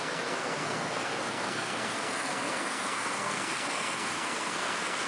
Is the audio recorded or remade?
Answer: remade